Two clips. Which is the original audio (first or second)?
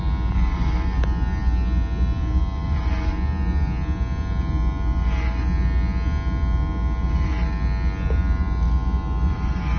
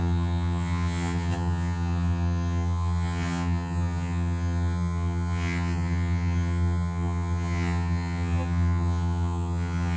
first